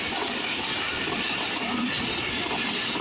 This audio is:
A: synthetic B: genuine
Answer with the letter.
A